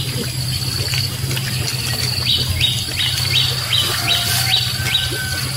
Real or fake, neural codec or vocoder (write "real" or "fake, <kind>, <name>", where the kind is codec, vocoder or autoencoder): real